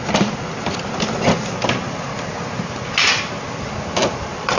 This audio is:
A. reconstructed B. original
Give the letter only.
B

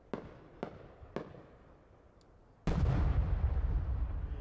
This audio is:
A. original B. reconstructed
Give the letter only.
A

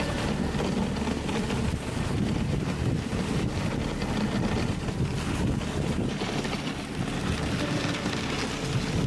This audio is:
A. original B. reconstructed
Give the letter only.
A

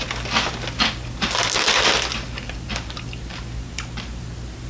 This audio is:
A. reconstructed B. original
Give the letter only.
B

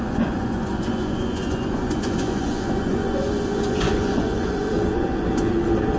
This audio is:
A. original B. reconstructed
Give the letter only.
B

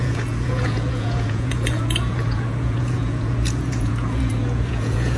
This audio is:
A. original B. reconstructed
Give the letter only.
B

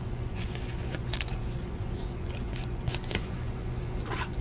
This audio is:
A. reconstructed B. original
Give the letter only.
A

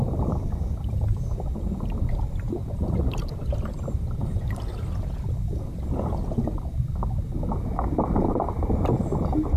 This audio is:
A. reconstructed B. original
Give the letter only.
B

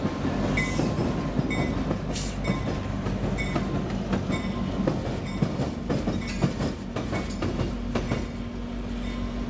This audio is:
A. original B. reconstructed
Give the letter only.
A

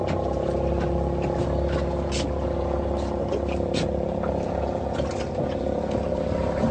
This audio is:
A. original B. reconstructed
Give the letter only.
A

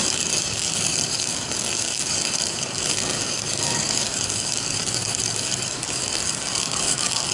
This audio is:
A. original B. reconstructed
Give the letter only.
B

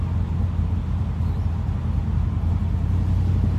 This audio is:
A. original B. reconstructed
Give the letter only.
A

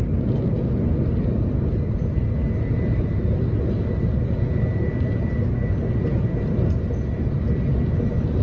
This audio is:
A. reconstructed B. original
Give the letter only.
B